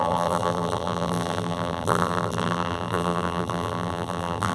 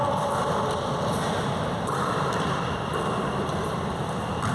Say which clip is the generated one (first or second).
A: first